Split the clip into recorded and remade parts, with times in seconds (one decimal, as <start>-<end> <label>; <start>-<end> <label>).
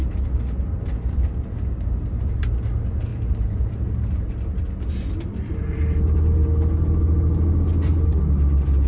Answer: 0.0-3.1 recorded; 3.1-4.3 remade; 4.3-8.9 recorded